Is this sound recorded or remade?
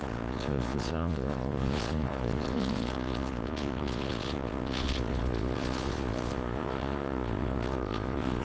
remade